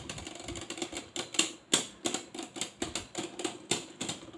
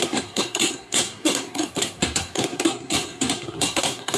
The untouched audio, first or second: first